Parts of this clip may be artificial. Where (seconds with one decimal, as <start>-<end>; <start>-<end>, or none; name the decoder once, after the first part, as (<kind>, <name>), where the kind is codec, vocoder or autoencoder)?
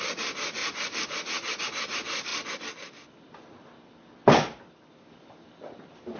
0.0-0.6 (vocoder, BigVGAN v2); 1.6-2.3; 5.6-6.2